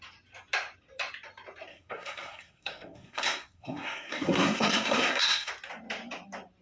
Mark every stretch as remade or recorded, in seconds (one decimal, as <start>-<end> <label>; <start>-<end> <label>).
0.0-1.7 recorded; 1.7-5.5 remade; 5.5-6.6 recorded